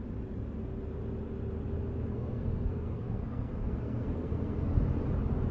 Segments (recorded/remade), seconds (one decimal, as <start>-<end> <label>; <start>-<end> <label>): 0.0-2.1 recorded; 2.1-4.7 remade; 4.7-5.5 recorded